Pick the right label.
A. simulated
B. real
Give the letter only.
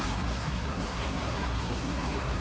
A